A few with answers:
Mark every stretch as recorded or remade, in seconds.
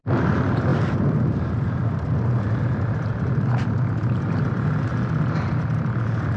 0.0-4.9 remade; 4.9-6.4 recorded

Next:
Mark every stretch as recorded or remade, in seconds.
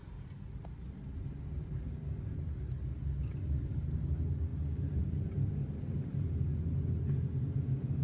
0.0-1.0 remade; 1.0-8.0 recorded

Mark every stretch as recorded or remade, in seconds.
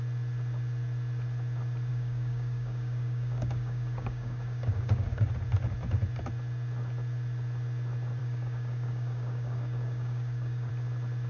0.0-1.9 recorded; 1.9-5.3 remade; 5.3-8.2 recorded; 8.2-10.7 remade; 10.7-11.3 recorded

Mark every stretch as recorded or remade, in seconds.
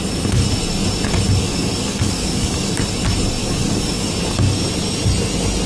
0.0-1.4 recorded; 1.4-2.7 remade; 2.7-3.4 recorded; 3.4-4.1 remade; 4.1-5.7 recorded